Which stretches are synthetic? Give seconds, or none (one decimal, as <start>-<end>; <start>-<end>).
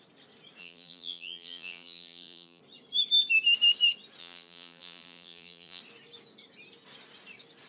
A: 0.6-2.6; 4.2-5.8